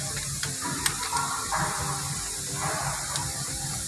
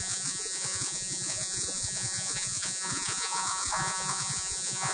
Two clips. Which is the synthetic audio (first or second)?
second